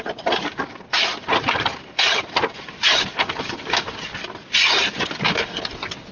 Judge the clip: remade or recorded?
recorded